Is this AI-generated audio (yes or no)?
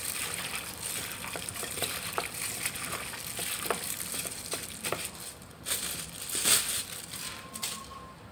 yes